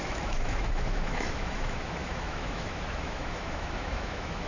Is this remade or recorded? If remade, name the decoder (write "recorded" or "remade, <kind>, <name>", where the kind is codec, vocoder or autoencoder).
remade, autoencoder, DAC-VAE